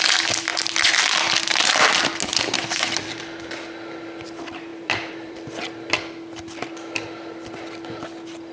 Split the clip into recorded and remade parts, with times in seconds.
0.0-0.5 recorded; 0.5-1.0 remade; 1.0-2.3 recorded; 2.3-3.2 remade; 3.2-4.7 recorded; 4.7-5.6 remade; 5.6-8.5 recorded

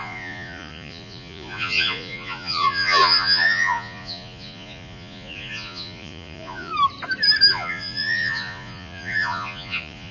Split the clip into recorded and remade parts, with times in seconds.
0.0-6.7 remade; 6.7-7.5 recorded; 7.5-10.1 remade

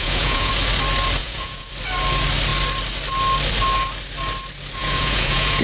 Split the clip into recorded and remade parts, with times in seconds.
0.0-0.5 remade; 0.5-1.2 recorded; 1.2-1.7 remade; 1.7-4.8 recorded; 4.8-5.6 remade

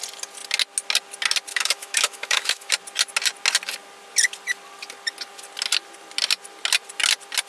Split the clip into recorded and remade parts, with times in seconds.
0.0-1.5 recorded; 1.5-2.7 remade; 2.7-7.5 recorded

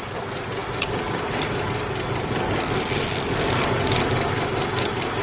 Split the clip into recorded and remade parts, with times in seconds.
0.0-5.2 recorded

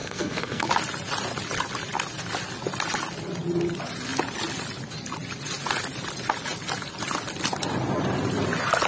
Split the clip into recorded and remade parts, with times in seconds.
0.0-0.7 remade; 0.7-8.9 recorded

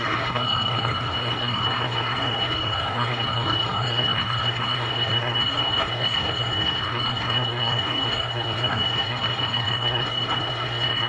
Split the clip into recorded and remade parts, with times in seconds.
0.0-11.1 remade